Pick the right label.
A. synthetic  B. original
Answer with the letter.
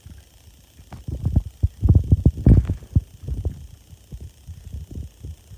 B